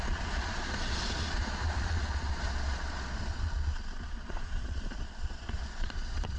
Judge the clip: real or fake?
fake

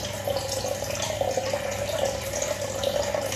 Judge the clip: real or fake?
real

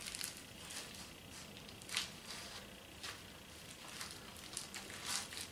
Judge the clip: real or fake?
real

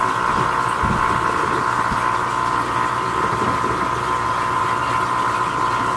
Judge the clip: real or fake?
real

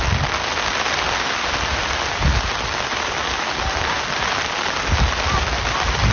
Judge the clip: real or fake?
real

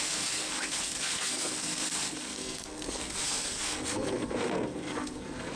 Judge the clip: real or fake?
fake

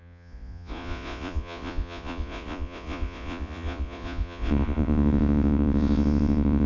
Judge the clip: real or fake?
fake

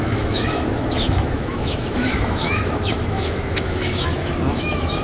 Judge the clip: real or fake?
fake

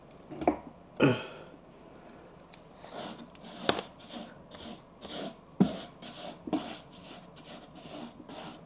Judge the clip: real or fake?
real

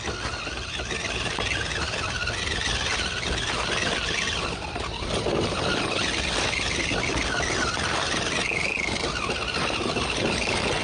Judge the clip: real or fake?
real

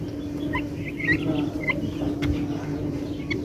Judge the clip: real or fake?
real